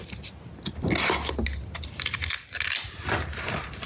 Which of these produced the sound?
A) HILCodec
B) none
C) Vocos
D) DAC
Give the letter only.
B